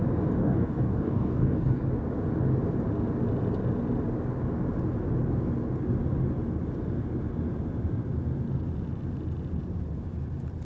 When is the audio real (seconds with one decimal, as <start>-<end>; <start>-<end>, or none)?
0.0-0.4; 1.8-10.6